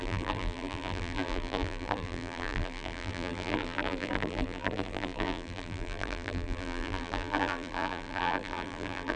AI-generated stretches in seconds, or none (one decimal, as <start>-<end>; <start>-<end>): 0.0-9.2